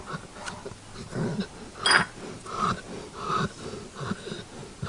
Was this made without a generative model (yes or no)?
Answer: yes